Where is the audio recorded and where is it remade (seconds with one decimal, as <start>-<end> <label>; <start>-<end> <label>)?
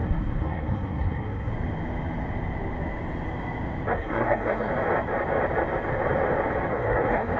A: 0.0-1.5 remade; 1.5-3.9 recorded; 3.9-4.7 remade; 4.7-6.7 recorded; 6.7-7.4 remade